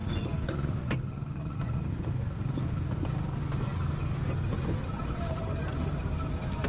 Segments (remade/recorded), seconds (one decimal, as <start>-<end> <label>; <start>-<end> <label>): 0.0-1.8 remade; 1.8-6.7 recorded

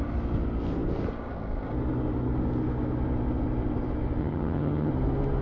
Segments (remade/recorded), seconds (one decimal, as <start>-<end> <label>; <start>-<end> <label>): 0.0-4.2 recorded; 4.2-4.9 remade; 4.9-5.4 recorded

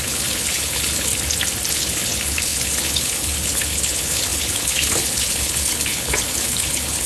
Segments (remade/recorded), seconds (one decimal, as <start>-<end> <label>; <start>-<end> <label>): 0.0-1.1 remade; 1.1-1.7 recorded; 1.7-7.1 remade

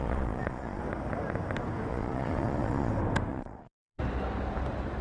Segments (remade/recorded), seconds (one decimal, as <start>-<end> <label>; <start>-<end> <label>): 0.0-0.8 remade; 0.8-1.9 recorded; 1.9-2.9 remade; 2.9-3.3 recorded; 3.3-4.0 remade; 4.0-5.0 recorded

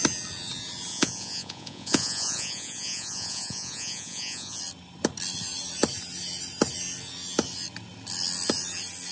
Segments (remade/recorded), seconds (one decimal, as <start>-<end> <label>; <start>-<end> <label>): 0.0-0.9 recorded; 0.9-4.6 remade; 4.6-9.1 recorded

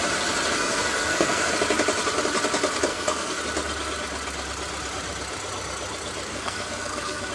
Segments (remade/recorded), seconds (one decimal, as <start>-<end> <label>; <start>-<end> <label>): 0.0-0.5 recorded; 0.5-1.5 remade; 1.5-2.9 recorded; 2.9-3.4 remade; 3.4-6.3 recorded; 6.3-7.3 remade

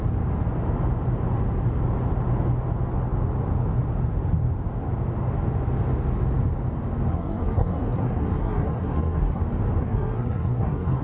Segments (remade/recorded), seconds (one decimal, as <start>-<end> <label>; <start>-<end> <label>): 0.0-7.1 recorded; 7.1-9.4 remade; 9.4-9.8 recorded; 9.8-11.0 remade